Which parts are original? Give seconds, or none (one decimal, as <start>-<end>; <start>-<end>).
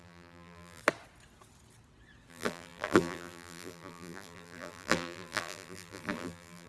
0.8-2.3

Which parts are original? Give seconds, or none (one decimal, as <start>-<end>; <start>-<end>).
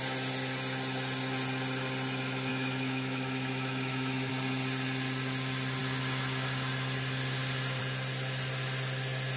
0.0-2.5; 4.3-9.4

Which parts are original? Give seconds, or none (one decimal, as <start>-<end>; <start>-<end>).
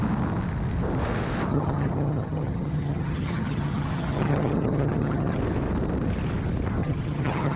0.0-1.5; 5.4-6.8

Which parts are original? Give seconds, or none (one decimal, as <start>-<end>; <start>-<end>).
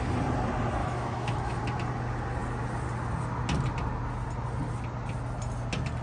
0.0-0.8; 1.6-6.0